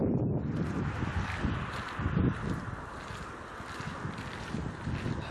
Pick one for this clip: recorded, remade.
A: recorded